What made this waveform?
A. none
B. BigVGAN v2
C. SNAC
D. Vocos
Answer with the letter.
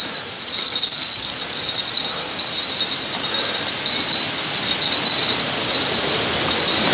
A